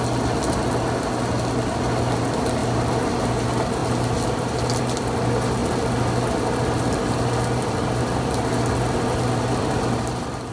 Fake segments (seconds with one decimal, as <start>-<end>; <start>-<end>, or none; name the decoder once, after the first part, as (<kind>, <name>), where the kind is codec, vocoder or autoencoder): none